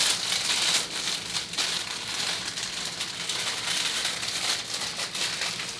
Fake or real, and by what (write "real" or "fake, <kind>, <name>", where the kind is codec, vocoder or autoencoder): real